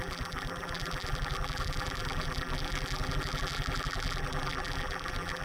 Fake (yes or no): yes